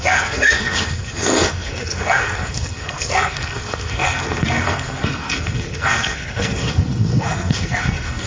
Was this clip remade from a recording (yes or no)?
yes